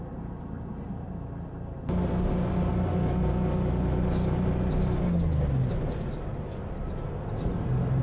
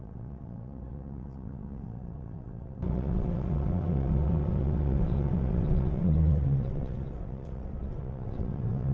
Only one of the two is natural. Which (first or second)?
first